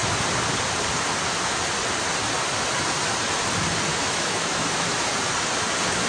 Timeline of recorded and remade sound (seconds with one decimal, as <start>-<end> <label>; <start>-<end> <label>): 0.0-3.9 recorded; 3.9-5.1 remade; 5.1-6.1 recorded